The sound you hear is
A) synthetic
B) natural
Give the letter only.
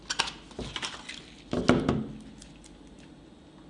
B